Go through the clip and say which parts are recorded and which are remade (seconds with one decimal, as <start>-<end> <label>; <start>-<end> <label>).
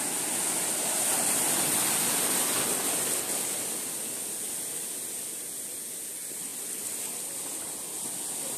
0.0-8.6 recorded